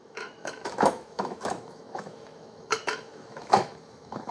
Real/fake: fake